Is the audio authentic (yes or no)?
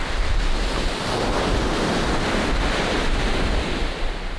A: yes